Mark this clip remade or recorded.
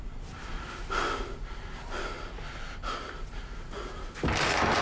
recorded